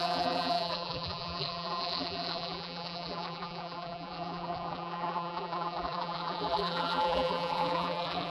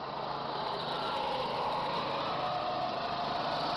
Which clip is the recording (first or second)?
second